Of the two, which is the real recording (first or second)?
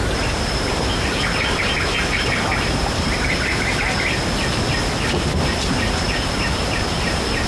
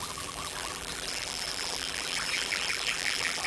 first